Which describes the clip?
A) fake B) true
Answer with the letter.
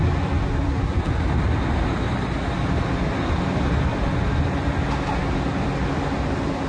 B